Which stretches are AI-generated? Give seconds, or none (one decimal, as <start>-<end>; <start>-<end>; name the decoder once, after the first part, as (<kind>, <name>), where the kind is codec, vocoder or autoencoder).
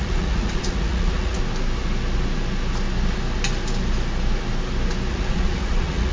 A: 0.0-1.4 (vocoder, Vocos); 5.1-6.1